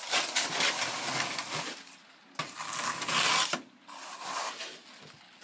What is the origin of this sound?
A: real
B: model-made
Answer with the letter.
A